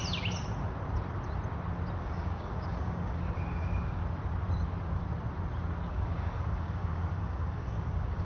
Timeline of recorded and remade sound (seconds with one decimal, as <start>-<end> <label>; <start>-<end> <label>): 0.0-2.0 recorded; 2.0-4.0 remade; 4.0-5.9 recorded; 5.9-8.2 remade